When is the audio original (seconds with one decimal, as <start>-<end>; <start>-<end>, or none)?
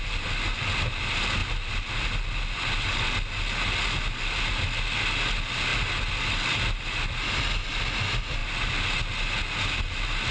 0.0-10.3